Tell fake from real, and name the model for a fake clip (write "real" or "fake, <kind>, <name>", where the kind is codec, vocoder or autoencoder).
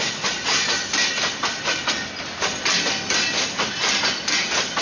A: real